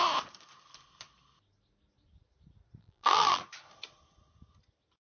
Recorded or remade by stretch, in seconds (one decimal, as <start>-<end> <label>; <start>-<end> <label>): 0.0-2.8 recorded; 2.8-3.4 remade; 3.4-5.0 recorded

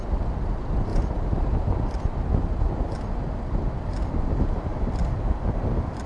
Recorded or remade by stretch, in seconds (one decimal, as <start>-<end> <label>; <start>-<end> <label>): 0.0-0.9 recorded; 0.9-1.7 remade; 1.7-4.7 recorded; 4.7-6.1 remade

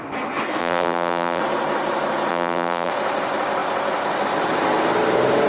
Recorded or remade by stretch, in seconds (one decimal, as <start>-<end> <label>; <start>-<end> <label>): 0.0-0.6 recorded; 0.6-1.4 remade; 1.4-2.3 recorded; 2.3-2.9 remade; 2.9-5.5 recorded

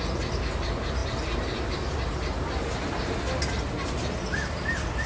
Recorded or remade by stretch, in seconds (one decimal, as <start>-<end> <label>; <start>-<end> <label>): 0.0-5.1 recorded

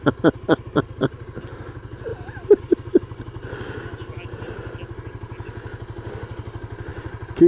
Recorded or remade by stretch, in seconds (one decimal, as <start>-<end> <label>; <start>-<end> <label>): 0.0-6.9 recorded; 6.9-7.5 remade

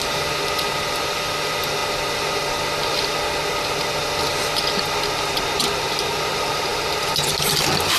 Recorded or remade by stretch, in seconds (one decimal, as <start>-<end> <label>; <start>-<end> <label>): 0.0-1.8 remade; 1.8-5.8 recorded; 5.8-6.7 remade; 6.7-7.6 recorded; 7.6-8.0 remade

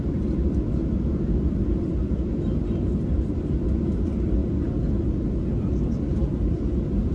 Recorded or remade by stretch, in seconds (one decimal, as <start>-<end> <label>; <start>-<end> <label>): 0.0-4.4 remade; 4.4-6.5 recorded; 6.5-7.1 remade